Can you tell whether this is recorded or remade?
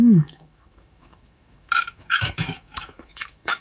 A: remade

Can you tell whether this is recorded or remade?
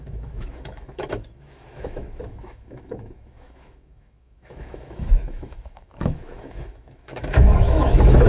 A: remade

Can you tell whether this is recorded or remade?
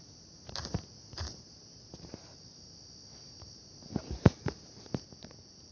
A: recorded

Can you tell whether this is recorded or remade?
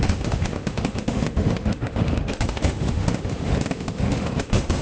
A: remade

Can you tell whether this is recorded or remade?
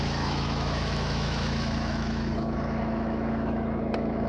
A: remade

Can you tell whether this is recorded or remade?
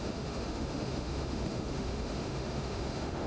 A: remade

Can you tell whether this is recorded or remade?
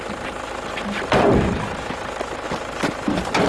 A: recorded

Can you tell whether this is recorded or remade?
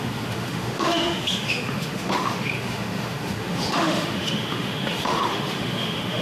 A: remade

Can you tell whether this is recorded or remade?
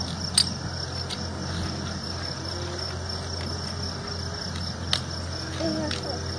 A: recorded